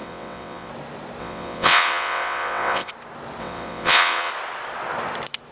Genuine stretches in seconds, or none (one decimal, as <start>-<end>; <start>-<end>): 0.7-1.2; 2.9-3.4; 4.3-5.5